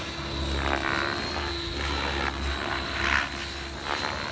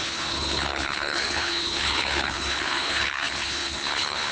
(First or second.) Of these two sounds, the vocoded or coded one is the second